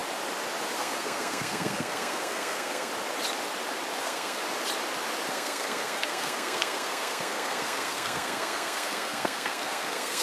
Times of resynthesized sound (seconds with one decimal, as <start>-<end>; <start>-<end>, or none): 0.8-2.9; 4.0-4.4; 5.3-10.2

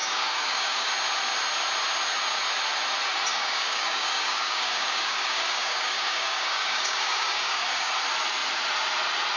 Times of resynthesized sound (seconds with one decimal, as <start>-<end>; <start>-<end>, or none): 0.0-0.9; 3.3-7.9

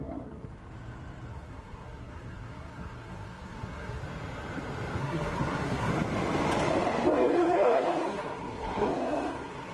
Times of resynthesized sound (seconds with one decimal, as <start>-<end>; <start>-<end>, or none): 0.0-0.5; 1.3-4.0; 5.0-5.9; 7.1-9.7

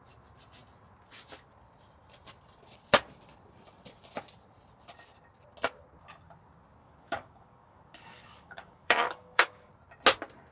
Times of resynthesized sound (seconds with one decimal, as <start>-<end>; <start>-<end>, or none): 6.8-9.7

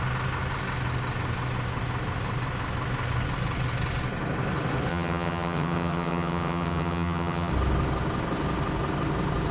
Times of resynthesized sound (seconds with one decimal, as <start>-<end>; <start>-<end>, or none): 4.9-7.5

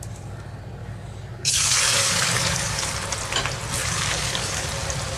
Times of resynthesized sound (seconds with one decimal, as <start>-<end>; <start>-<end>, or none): 0.8-2.9; 3.8-4.7

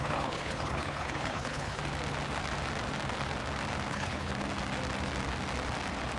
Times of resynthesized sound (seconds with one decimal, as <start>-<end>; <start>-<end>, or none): 0.0-1.8; 3.9-4.3

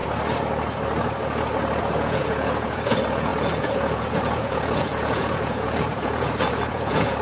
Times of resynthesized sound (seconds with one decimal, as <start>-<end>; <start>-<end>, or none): 1.8-7.2